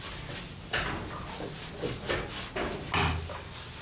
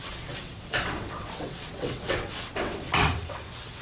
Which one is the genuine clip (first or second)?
first